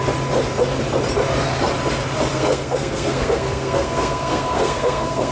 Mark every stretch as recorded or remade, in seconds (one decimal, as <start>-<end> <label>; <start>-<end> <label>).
0.0-2.3 recorded; 2.3-5.3 remade

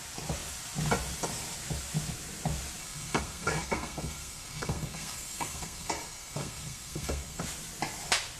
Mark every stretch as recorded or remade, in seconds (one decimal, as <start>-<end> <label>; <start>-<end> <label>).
0.0-2.8 recorded; 2.8-7.4 remade; 7.4-8.4 recorded

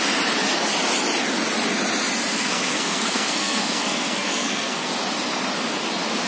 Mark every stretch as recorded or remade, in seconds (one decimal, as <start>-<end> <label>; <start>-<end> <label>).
0.0-2.3 recorded; 2.3-4.9 remade; 4.9-6.3 recorded

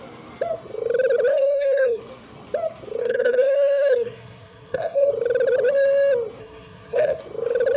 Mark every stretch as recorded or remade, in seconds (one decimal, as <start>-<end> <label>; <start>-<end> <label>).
0.0-1.3 recorded; 1.3-2.0 remade; 2.0-3.0 recorded; 3.0-5.1 remade; 5.1-6.4 recorded; 6.4-7.2 remade; 7.2-7.8 recorded

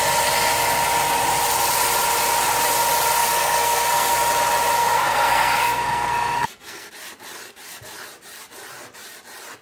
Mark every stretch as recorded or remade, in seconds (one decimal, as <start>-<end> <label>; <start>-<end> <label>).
0.0-3.2 recorded; 3.2-4.3 remade; 4.3-4.7 recorded; 4.7-6.9 remade; 6.9-9.6 recorded

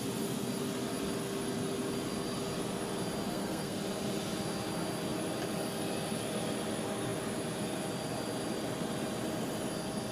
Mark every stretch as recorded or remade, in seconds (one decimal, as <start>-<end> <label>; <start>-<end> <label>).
0.0-3.3 recorded; 3.3-3.8 remade; 3.8-10.1 recorded